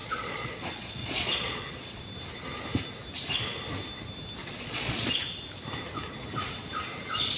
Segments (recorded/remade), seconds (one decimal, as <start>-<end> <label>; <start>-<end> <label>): 0.0-2.0 remade; 2.0-4.4 recorded; 4.4-5.1 remade; 5.1-7.4 recorded

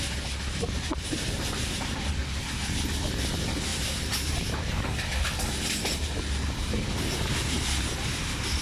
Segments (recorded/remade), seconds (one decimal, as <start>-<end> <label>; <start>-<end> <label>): 0.0-0.5 recorded; 0.5-2.1 remade; 2.1-3.7 recorded; 3.7-5.1 remade; 5.1-7.4 recorded; 7.4-7.9 remade; 7.9-8.6 recorded

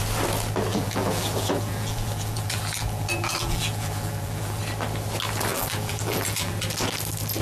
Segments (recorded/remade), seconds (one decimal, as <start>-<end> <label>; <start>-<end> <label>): 0.0-0.7 recorded; 0.7-4.6 remade; 4.6-5.5 recorded; 5.5-6.5 remade; 6.5-7.4 recorded

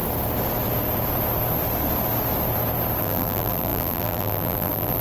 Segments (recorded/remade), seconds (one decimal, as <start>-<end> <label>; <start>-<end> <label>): 0.0-3.0 recorded; 3.0-5.0 remade

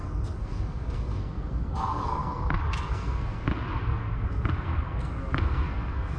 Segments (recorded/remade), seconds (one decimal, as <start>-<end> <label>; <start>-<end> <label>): 0.0-6.2 remade

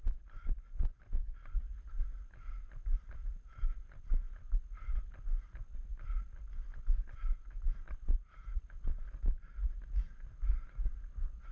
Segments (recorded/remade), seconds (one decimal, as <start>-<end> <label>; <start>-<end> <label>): 0.0-11.5 recorded

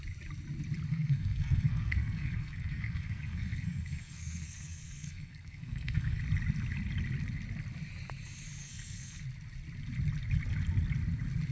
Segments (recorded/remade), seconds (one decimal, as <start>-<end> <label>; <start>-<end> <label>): 0.0-0.9 recorded; 0.9-6.2 remade; 6.2-8.6 recorded; 8.6-9.2 remade; 9.2-11.5 recorded

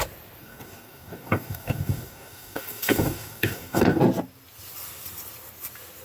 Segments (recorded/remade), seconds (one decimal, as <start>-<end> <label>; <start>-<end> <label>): 0.0-0.4 recorded; 0.4-4.0 remade; 4.0-6.0 recorded